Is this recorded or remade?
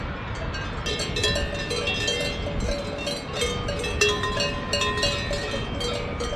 recorded